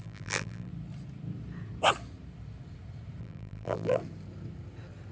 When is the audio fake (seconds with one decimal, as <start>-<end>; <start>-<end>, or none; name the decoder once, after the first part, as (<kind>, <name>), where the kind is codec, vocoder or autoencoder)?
0.0-0.7 (vocoder, BigVGAN v2); 3.2-4.0